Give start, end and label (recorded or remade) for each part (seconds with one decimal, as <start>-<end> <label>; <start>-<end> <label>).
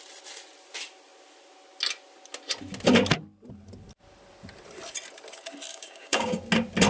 0.0-5.7 recorded; 5.7-6.4 remade; 6.4-6.9 recorded